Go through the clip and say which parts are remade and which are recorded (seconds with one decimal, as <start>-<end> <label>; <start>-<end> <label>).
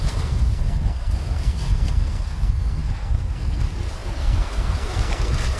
0.0-5.6 remade